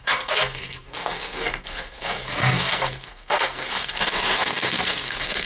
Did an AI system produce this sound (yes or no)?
yes